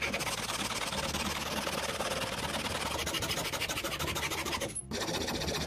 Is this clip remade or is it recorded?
recorded